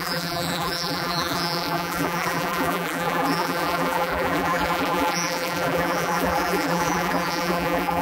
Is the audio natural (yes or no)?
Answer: no